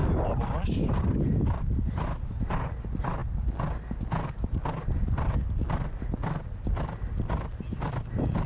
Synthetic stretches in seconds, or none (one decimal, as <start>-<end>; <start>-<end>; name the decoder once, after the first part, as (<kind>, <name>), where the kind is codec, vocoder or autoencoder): none